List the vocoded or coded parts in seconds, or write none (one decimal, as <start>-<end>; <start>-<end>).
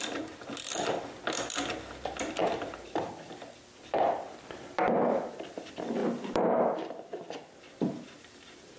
none